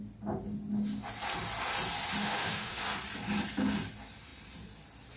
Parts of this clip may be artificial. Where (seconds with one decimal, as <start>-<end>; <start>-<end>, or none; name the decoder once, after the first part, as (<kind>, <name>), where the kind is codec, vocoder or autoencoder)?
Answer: 2.2-2.8 (autoencoder, DAC-VAE)